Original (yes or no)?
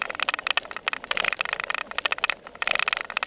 yes